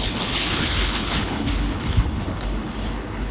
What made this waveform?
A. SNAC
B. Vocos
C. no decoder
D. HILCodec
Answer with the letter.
D